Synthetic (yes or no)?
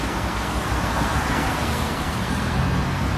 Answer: yes